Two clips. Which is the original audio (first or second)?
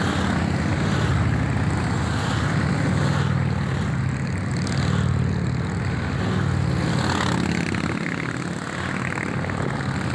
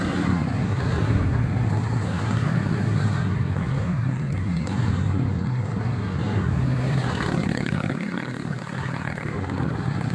first